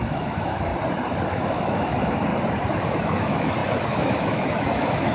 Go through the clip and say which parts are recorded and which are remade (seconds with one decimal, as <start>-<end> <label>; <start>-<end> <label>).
0.0-0.7 remade; 0.7-1.3 recorded; 1.3-2.3 remade; 2.3-3.0 recorded; 3.0-5.1 remade